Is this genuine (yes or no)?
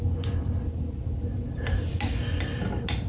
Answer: yes